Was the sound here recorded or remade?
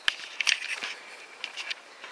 recorded